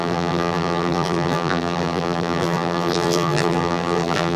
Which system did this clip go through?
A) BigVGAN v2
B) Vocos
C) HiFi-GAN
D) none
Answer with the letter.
A